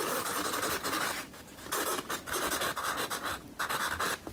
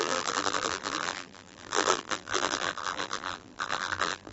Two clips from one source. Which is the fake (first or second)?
second